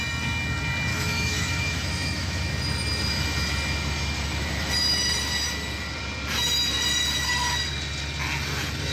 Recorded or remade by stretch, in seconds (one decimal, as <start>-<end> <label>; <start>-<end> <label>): 0.0-0.9 recorded; 0.9-2.5 remade; 2.5-8.9 recorded